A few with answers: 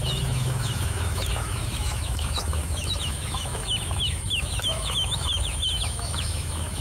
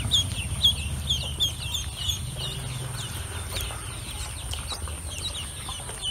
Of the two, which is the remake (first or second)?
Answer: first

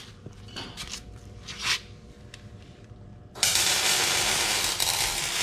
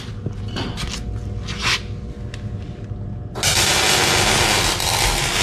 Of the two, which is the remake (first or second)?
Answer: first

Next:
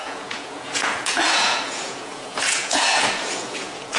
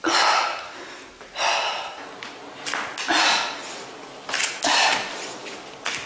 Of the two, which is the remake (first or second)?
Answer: first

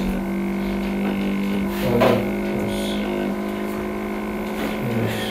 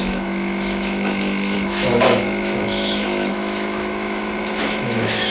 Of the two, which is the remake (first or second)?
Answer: second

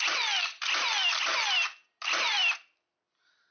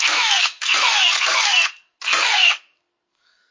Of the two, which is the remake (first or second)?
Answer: second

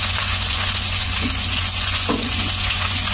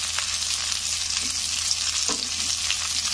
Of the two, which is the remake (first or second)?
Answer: first